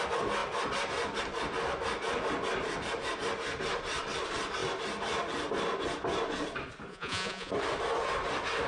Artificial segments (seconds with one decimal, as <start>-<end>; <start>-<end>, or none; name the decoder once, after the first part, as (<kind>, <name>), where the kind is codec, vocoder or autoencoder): 6.9-7.5 (vocoder, Vocos)